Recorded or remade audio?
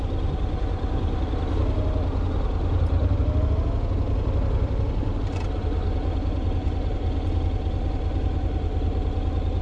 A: recorded